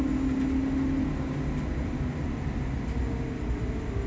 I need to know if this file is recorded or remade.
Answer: recorded